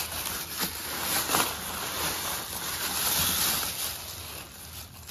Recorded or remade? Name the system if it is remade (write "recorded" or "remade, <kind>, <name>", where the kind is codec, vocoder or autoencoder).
recorded